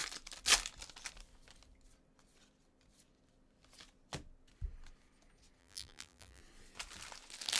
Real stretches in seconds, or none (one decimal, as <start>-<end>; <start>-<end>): 0.0-5.6; 6.4-7.6